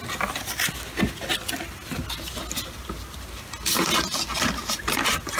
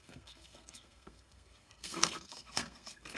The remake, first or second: second